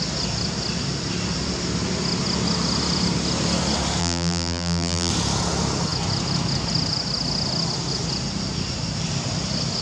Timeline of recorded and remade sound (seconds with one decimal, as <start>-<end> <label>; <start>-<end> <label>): 0.0-4.0 recorded; 4.0-5.1 remade; 5.1-9.8 recorded